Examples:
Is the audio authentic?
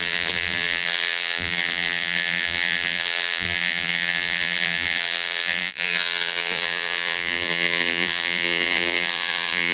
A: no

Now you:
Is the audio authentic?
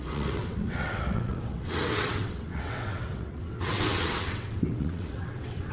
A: no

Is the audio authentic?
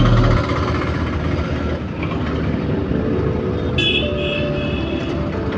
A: yes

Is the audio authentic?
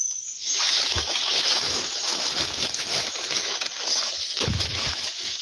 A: no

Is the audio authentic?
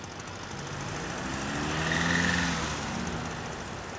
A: yes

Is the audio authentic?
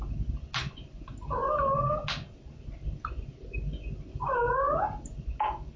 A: yes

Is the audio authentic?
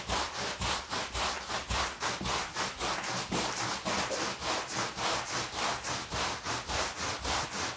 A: yes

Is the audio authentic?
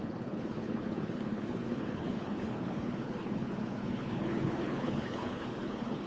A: no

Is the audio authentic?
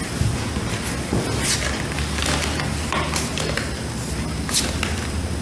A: yes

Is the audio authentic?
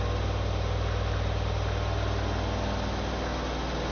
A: yes